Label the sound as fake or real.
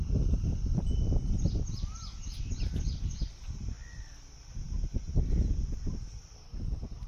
real